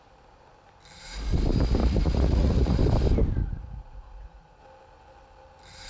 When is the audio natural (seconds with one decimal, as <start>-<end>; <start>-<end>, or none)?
0.0-1.8; 2.8-3.4; 4.6-5.9